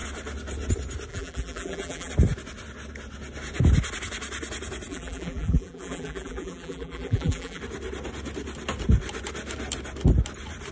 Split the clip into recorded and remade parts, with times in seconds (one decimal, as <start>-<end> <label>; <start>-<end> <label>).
0.0-1.1 recorded; 1.1-2.1 remade; 2.1-4.9 recorded; 4.9-7.6 remade; 7.6-10.7 recorded